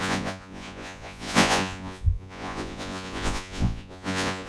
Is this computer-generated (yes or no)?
yes